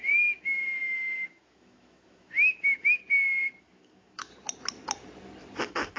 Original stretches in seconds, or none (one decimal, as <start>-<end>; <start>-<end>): 3.0-3.6; 4.3-5.6